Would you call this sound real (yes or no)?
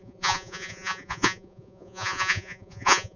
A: no